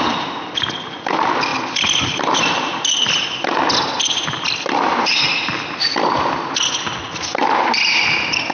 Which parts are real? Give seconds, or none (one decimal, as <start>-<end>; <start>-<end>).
0.0-8.5